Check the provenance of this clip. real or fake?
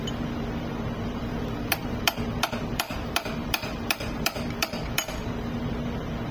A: fake